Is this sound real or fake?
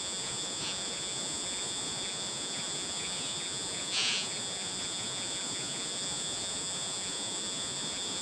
fake